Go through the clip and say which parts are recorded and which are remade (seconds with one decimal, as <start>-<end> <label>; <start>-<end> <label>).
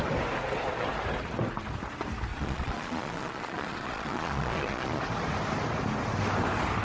0.0-2.3 recorded; 2.3-5.0 remade; 5.0-6.8 recorded